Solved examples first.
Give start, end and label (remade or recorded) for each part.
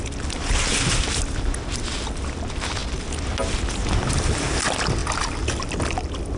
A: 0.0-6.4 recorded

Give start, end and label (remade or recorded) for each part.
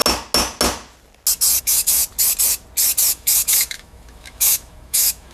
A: 0.0-1.6 recorded; 1.6-2.0 remade; 2.0-3.1 recorded; 3.1-5.3 remade